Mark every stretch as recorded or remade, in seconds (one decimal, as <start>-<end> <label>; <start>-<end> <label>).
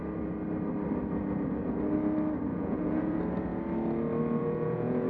0.0-2.5 recorded; 2.5-3.2 remade; 3.2-4.4 recorded; 4.4-5.1 remade